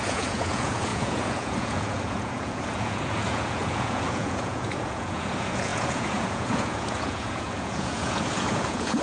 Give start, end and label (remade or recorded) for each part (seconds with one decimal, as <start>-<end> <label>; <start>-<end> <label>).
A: 0.0-9.0 remade